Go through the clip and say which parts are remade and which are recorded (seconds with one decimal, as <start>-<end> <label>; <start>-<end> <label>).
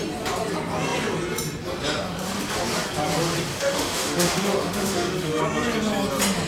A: 0.0-3.5 recorded; 3.5-5.4 remade; 5.4-6.5 recorded